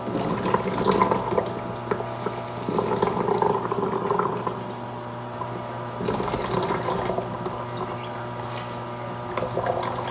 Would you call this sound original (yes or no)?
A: yes